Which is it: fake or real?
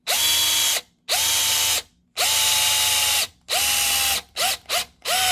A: real